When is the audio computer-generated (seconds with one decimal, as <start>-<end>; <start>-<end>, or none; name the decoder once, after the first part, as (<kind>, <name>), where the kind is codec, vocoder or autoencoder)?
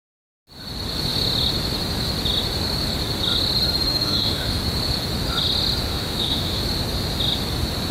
3.9-4.6 (autoencoder, DAC-VAE); 5.9-6.6